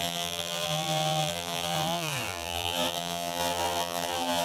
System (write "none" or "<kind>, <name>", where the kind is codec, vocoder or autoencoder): vocoder, BigVGAN v2